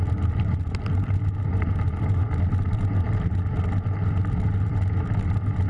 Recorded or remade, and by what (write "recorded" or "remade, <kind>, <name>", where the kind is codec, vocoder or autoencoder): recorded